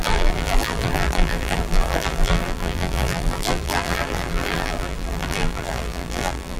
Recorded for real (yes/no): no